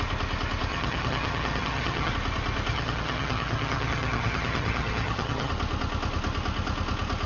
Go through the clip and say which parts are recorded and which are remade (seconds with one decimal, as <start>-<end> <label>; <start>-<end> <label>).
0.0-0.7 recorded; 0.7-2.1 remade; 2.1-2.7 recorded; 2.7-5.5 remade; 5.5-7.3 recorded